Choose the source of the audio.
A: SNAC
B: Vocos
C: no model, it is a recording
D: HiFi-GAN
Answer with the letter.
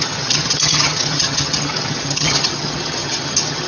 D